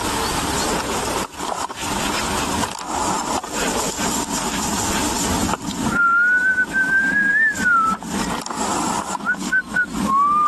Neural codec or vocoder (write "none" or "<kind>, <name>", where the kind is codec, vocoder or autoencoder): none